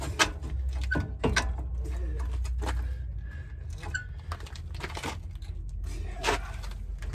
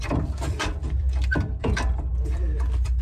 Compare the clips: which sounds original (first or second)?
first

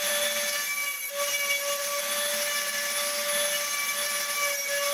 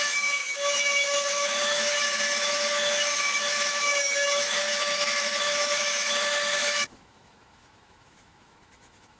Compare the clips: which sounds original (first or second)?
first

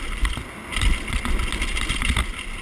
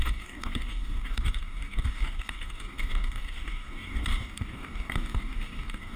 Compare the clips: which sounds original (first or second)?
first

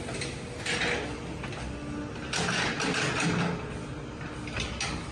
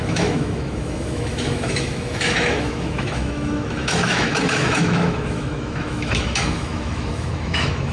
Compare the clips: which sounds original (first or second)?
first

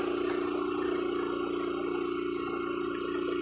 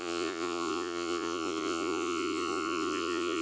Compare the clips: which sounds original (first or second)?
first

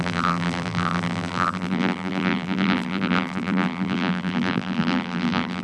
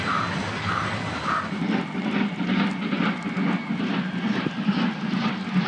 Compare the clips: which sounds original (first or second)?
second